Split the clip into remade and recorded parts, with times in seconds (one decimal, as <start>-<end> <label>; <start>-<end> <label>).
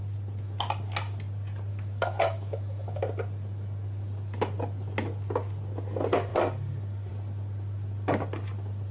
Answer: 0.0-1.7 recorded; 1.7-3.0 remade; 3.0-8.9 recorded